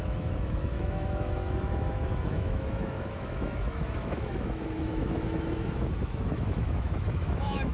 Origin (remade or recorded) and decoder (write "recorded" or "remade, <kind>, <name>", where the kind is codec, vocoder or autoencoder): remade, autoencoder, DAC-VAE